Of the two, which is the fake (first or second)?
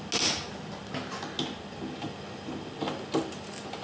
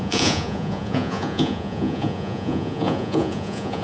second